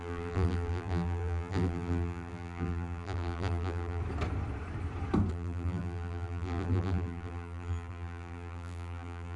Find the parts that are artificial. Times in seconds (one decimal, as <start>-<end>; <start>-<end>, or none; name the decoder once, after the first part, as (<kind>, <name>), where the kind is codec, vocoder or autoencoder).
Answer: 0.0-4.0 (vocoder, BigVGAN v2); 5.3-9.4